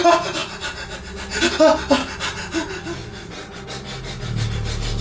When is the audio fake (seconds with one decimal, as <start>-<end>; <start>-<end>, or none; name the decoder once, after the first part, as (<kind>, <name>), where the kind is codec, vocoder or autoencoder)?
3.0-3.6 (vocoder, Vocos)